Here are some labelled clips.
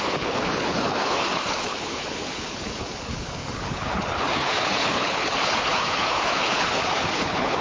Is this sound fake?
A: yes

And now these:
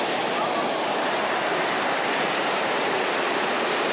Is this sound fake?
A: no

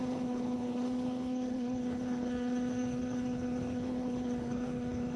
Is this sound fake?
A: yes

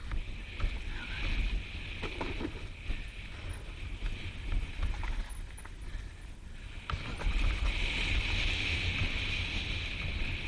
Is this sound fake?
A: no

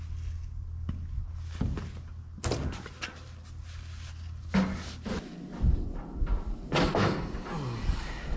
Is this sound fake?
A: no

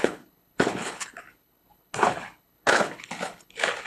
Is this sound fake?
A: yes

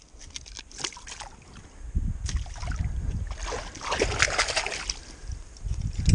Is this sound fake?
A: no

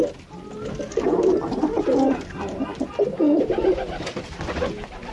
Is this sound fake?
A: no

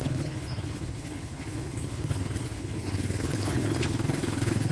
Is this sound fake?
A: yes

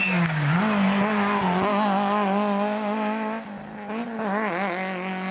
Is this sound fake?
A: no